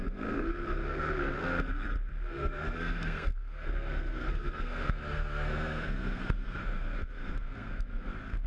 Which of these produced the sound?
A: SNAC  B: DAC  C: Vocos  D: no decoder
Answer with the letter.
A